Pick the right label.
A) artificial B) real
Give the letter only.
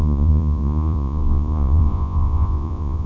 A